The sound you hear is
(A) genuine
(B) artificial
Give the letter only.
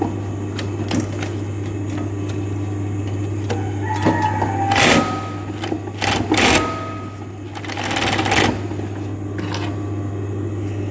A